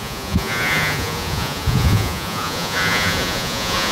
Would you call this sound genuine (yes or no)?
no